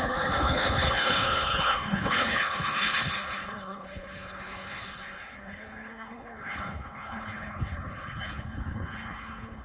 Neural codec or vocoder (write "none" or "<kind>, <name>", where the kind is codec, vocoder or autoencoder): codec, HILCodec